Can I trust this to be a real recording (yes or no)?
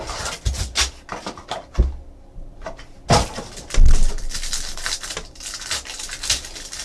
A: yes